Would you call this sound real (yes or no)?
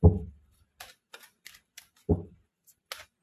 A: yes